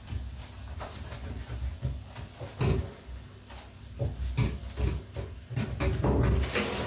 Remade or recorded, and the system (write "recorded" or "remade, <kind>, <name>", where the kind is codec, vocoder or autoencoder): recorded